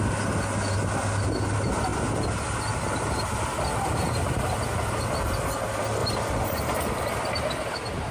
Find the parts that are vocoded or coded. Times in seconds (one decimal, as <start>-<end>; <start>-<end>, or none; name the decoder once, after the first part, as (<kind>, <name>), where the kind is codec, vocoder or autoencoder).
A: 6.0-7.3 (vocoder, BigVGAN v2)